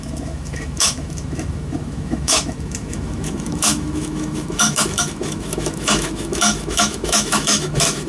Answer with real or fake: fake